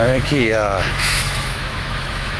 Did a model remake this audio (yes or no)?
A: yes